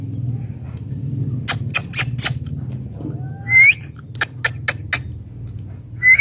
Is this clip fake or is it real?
real